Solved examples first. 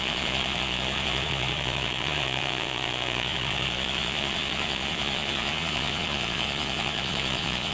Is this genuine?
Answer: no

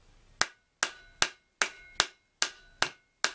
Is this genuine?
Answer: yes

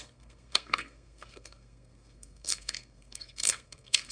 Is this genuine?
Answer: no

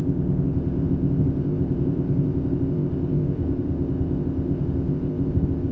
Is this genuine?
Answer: no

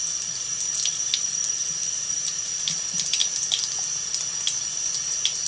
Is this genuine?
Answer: yes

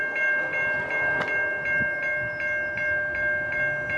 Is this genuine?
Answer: yes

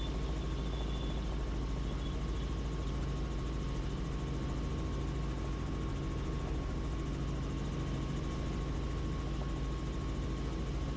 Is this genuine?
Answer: yes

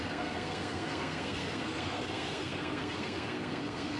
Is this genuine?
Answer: no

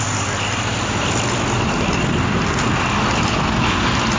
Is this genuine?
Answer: yes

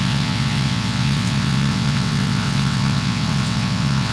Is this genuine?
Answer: no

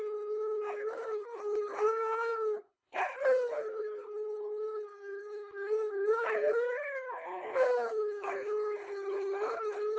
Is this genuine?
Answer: no